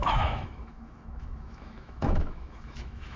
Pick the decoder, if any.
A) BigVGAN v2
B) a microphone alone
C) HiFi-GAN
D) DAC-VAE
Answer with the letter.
D